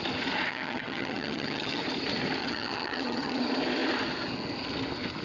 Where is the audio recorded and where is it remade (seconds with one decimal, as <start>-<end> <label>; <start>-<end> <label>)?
0.0-0.5 recorded; 0.5-1.8 remade; 1.8-2.4 recorded; 2.4-3.4 remade; 3.4-5.2 recorded